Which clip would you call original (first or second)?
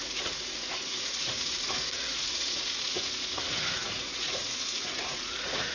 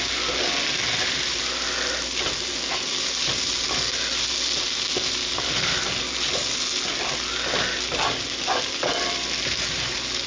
second